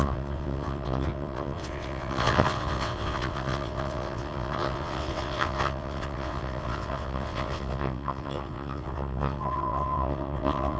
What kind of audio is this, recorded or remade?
remade